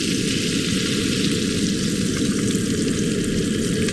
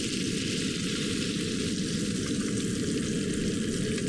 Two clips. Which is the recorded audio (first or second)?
first